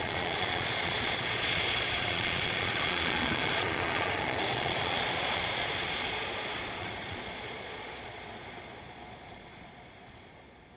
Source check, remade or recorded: remade